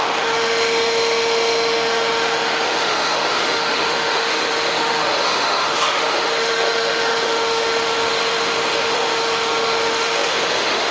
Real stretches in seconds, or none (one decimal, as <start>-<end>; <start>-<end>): none